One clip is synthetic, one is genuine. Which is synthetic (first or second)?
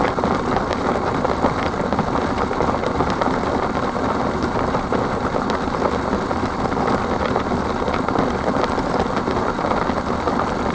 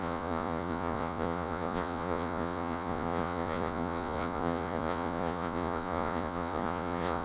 second